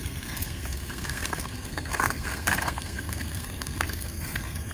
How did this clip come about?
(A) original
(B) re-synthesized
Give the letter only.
B